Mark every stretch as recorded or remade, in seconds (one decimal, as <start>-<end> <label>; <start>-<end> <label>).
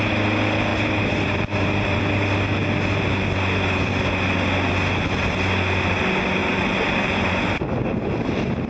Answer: 0.0-0.7 recorded; 0.7-2.0 remade; 2.0-6.4 recorded; 6.4-7.3 remade; 7.3-8.7 recorded